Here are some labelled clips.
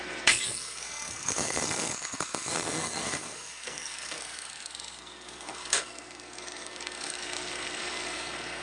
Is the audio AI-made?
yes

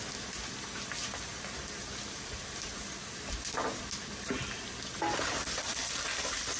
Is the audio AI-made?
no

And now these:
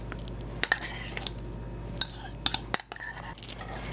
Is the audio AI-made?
no